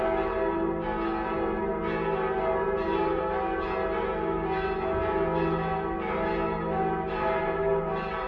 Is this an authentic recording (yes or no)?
yes